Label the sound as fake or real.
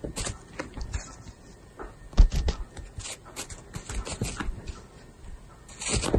real